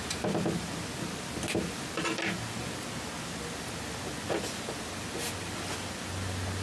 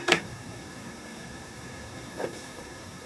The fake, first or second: second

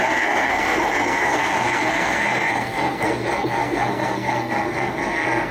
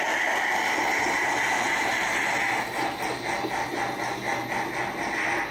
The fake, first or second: first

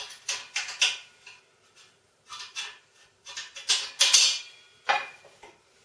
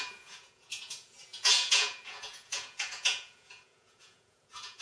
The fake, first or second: second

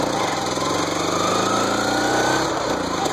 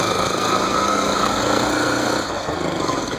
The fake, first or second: second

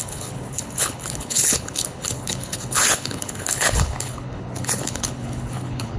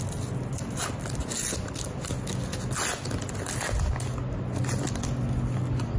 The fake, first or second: first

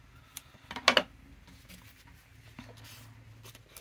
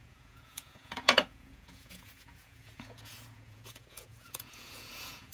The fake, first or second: second